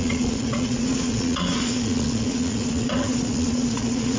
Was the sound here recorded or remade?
remade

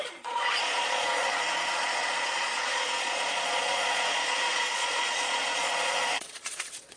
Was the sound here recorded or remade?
remade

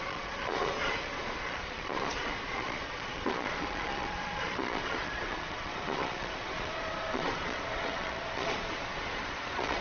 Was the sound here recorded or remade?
remade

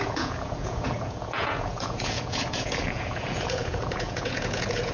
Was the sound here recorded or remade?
remade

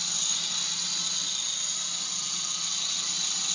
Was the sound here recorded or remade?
recorded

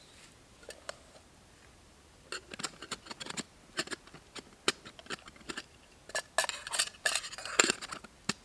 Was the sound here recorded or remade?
recorded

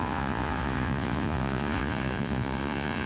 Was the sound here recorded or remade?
remade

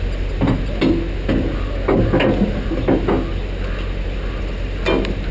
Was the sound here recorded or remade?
recorded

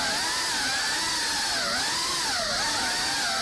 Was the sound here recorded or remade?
recorded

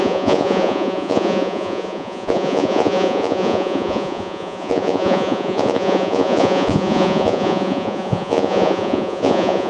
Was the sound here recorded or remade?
remade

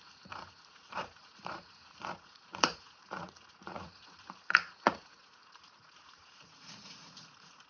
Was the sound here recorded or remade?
remade